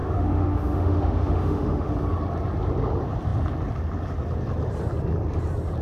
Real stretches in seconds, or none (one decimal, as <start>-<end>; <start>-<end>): 1.9-5.8